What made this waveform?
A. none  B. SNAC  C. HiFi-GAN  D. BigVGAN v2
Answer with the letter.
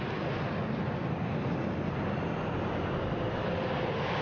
A